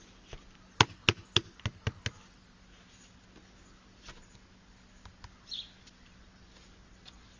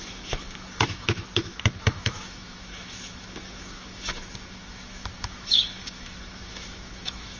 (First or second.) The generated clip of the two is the second